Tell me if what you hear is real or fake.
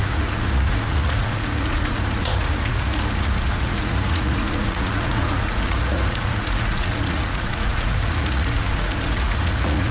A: fake